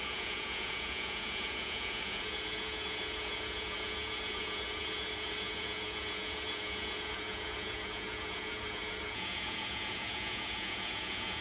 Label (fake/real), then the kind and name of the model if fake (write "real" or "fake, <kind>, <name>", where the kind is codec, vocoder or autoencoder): fake, vocoder, Vocos